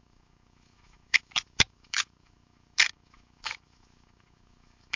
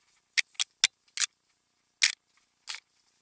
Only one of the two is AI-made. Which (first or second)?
first